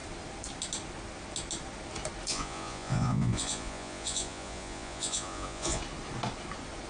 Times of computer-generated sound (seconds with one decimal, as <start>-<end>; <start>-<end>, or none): 2.3-5.8